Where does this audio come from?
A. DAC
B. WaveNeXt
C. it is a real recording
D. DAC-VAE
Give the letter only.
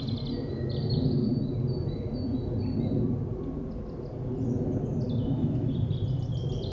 C